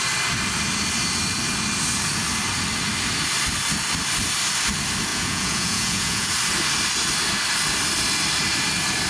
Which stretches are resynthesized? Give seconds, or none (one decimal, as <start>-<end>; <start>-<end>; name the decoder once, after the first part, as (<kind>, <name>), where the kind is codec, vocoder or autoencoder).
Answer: 5.1-6.3 (vocoder, Vocos)